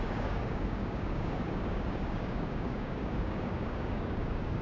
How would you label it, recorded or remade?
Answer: remade